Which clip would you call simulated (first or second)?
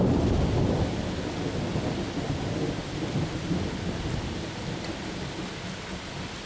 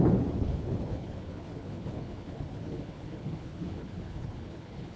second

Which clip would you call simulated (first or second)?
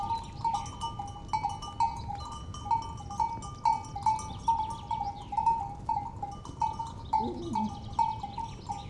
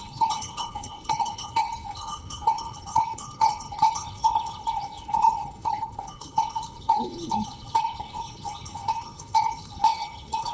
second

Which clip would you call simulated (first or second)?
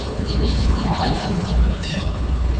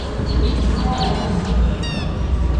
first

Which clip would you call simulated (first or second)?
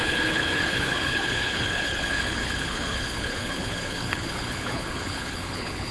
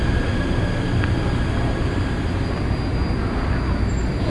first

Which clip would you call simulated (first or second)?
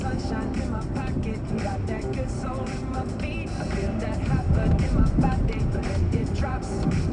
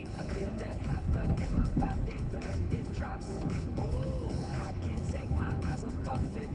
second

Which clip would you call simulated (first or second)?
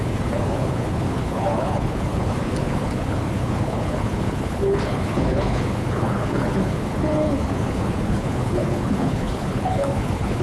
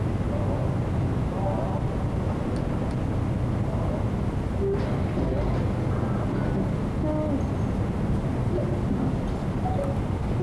first